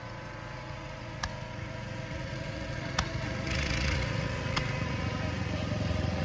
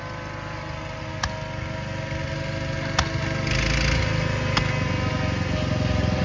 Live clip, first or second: second